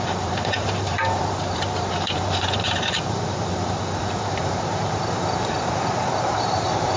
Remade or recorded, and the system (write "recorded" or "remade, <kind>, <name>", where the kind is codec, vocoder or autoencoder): remade, vocoder, BigVGAN v2